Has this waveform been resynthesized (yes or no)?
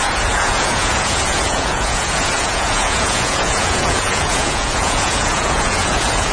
yes